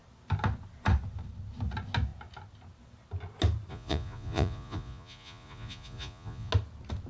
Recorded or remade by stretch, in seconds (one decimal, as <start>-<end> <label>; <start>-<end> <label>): 0.0-3.7 recorded; 3.7-6.5 remade; 6.5-7.1 recorded